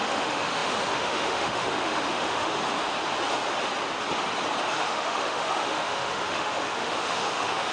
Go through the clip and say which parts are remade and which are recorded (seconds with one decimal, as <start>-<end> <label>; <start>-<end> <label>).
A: 0.0-2.6 remade; 2.6-4.7 recorded; 4.7-7.7 remade